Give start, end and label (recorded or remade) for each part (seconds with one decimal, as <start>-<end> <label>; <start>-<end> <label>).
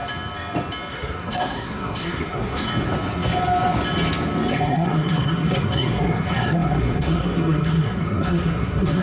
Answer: 0.0-0.9 recorded; 0.9-2.7 remade; 2.7-4.5 recorded; 4.5-9.0 remade